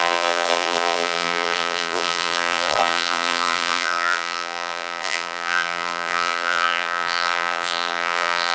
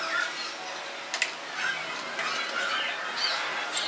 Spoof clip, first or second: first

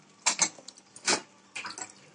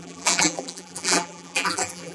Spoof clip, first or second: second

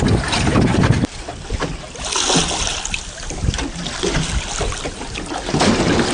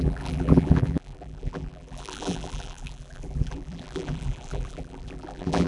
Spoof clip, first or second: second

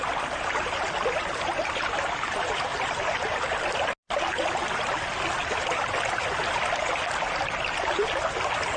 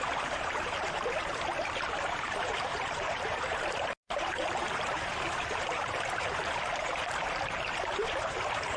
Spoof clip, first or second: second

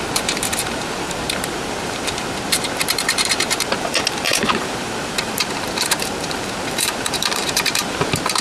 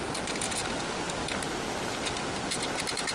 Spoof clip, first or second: first